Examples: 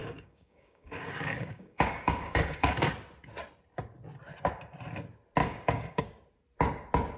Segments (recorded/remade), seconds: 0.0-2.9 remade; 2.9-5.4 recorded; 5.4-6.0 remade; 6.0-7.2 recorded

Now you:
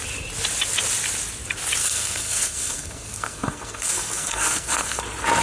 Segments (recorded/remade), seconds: 0.0-1.8 recorded; 1.8-5.0 remade; 5.0-5.4 recorded

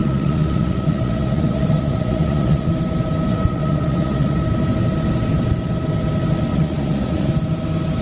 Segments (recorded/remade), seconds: 0.0-2.7 remade; 2.7-3.3 recorded; 3.3-4.4 remade; 4.4-6.5 recorded; 6.5-7.3 remade; 7.3-8.0 recorded

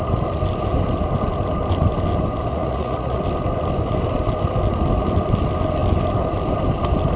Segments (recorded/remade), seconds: 0.0-2.5 recorded; 2.5-3.2 remade; 3.2-7.2 recorded

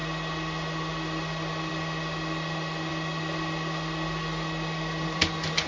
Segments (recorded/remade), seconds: 0.0-5.7 recorded

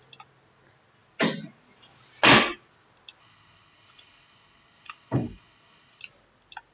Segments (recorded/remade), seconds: 0.0-3.2 recorded; 3.2-6.0 remade; 6.0-6.7 recorded